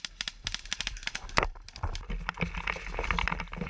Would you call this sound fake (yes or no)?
no